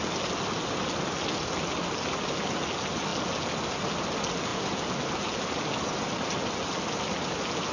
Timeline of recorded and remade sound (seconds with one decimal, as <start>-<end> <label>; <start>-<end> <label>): 0.0-7.7 recorded